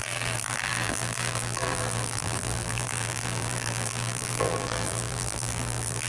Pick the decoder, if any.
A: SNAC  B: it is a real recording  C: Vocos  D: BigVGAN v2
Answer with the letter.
D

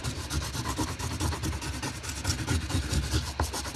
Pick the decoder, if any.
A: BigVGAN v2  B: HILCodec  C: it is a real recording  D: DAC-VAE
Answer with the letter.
C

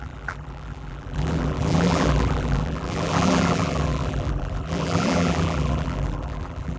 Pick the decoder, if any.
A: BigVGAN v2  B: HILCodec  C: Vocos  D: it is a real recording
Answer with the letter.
A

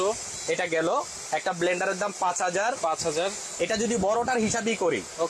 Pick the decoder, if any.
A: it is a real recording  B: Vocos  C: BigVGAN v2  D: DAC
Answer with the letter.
A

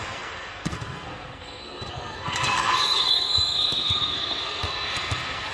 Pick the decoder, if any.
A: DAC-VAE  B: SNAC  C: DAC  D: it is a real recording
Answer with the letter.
B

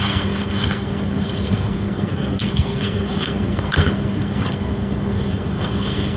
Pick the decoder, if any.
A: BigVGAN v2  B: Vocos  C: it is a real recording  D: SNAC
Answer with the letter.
D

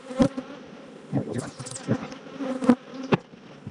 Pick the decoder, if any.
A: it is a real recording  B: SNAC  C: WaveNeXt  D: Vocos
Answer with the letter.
A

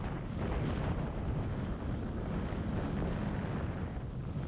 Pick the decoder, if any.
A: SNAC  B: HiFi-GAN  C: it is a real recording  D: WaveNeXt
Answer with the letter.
C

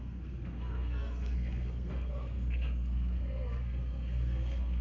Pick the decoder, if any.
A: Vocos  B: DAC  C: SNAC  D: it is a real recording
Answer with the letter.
C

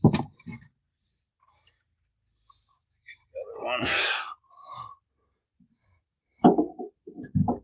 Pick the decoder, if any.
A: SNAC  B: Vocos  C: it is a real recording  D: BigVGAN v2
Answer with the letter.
C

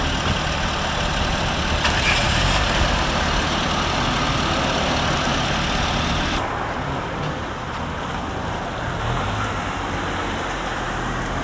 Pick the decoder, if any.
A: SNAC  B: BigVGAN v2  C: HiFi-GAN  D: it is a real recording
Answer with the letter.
D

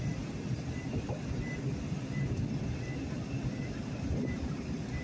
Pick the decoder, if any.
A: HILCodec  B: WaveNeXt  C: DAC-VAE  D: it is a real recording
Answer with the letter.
D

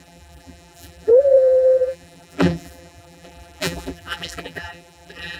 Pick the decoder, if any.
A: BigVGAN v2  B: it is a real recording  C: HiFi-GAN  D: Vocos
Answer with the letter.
A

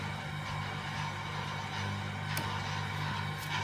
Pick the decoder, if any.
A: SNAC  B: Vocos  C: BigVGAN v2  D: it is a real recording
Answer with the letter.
D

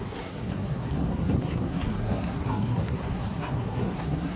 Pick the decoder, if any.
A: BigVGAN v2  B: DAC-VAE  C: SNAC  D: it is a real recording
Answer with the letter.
C